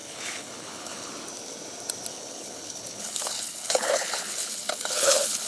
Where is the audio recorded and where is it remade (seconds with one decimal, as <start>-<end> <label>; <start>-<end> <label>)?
0.0-1.1 remade; 1.1-2.1 recorded; 2.1-5.5 remade